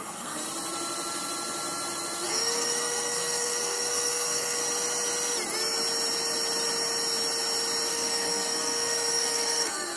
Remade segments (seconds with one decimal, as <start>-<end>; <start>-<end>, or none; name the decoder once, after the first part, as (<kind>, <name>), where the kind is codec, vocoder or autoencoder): 0.0-0.4 (codec, SNAC); 2.3-4.6; 7.9-10.0